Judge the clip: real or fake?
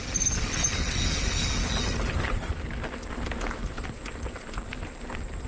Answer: real